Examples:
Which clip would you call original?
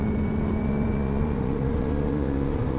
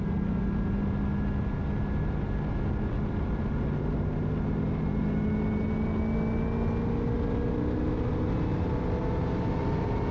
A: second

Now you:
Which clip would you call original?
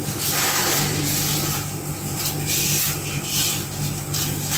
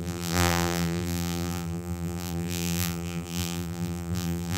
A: first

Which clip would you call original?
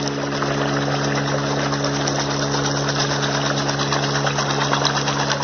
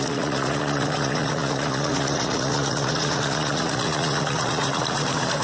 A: first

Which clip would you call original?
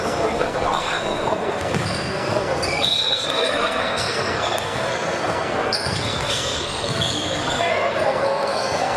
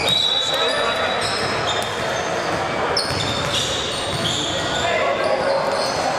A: second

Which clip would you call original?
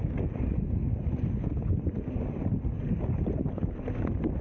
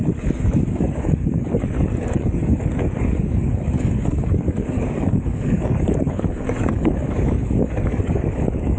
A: first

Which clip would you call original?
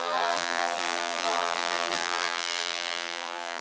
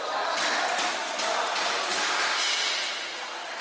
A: second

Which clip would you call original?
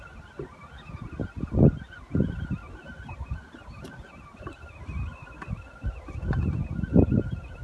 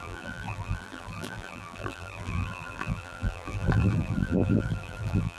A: first